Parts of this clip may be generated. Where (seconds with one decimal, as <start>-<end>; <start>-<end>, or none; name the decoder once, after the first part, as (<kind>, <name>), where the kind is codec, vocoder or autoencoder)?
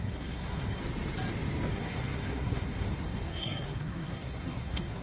0.0-0.8 (codec, SNAC); 1.7-5.0